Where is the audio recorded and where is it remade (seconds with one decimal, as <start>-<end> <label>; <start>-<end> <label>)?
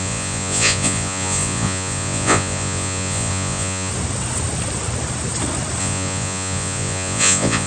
0.0-3.9 remade; 3.9-5.8 recorded; 5.8-7.7 remade